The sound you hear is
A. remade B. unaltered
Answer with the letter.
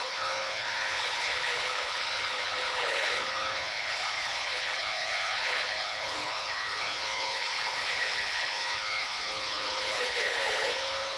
A